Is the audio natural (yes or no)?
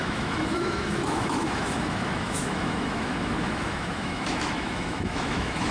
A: no